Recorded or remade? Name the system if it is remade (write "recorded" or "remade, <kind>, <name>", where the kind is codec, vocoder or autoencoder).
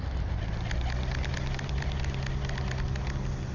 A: recorded